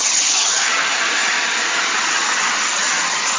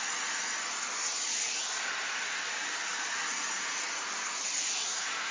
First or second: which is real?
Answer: second